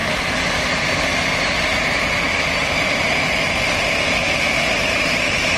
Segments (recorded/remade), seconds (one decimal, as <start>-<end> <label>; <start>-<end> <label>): 0.0-1.7 remade; 1.7-4.5 recorded; 4.5-5.6 remade